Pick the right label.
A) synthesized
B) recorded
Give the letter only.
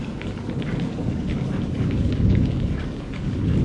A